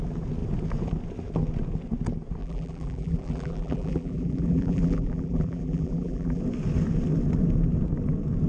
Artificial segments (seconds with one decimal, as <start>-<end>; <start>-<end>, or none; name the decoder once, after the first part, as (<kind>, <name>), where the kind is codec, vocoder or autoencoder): 2.4-6.4 (vocoder, BigVGAN v2)